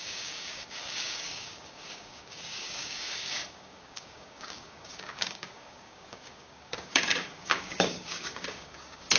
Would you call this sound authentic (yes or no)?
no